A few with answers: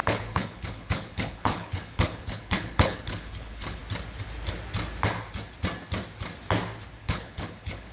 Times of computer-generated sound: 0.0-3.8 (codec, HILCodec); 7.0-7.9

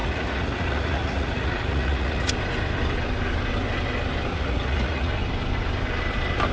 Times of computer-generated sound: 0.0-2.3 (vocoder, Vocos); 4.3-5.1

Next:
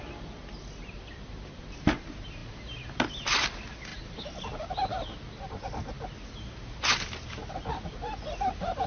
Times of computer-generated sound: none

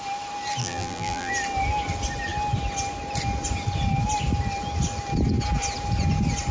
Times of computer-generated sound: 0.6-1.3 (vocoder, BigVGAN v2)

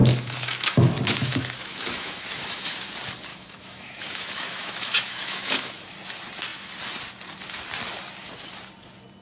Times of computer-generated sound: 0.0-2.9 (autoencoder, DAC-VAE); 3.3-6.0

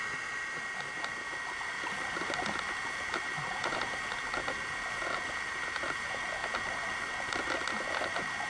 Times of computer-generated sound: none